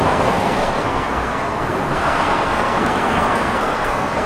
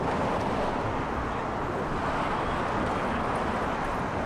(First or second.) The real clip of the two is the second